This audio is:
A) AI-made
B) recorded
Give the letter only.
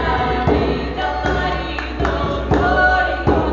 B